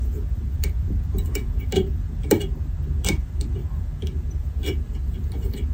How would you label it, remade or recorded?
remade